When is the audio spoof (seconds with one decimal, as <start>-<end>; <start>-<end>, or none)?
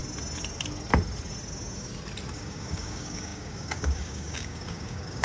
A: 2.3-5.2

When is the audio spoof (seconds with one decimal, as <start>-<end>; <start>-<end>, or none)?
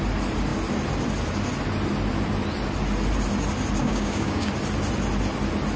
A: 3.8-4.5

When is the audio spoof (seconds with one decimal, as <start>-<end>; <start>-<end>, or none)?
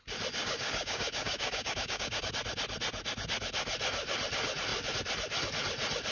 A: 0.4-2.3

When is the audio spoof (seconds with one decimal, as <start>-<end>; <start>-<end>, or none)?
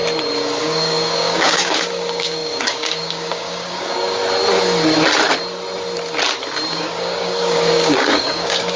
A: 0.6-4.2; 6.7-8.8